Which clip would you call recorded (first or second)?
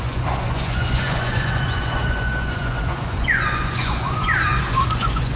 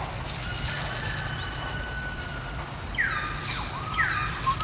second